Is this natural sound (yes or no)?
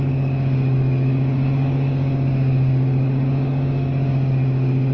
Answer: no